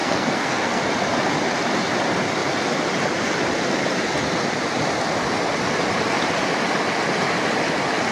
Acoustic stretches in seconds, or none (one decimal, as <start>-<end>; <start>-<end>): 0.8-8.1

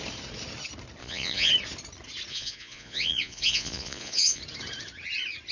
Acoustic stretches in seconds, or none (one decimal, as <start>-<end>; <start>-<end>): 0.0-1.0; 1.5-2.3; 4.4-5.5

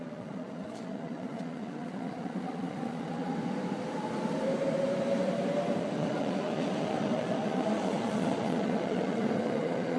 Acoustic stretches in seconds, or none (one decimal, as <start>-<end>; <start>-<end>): 3.3-5.8